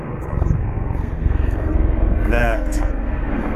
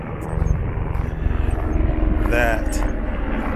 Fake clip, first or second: first